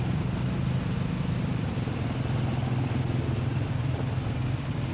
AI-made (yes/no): no